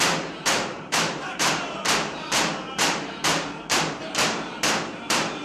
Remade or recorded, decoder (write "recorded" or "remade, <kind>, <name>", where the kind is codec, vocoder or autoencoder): remade, vocoder, BigVGAN v2